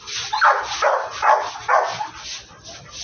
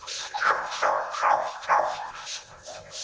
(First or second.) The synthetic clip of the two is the second